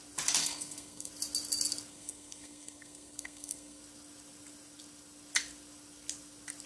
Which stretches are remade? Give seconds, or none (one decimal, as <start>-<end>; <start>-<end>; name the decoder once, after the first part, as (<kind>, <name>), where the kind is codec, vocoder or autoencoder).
0.4-1.1 (codec, SNAC); 1.9-3.8